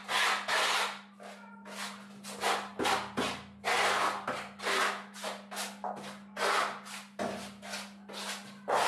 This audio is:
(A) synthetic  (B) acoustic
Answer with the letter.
B